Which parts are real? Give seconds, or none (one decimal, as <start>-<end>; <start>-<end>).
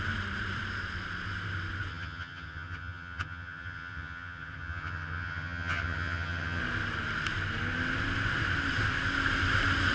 0.0-1.9; 6.6-9.9